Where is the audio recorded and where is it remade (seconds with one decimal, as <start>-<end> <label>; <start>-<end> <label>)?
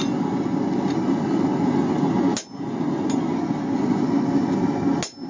0.0-5.3 recorded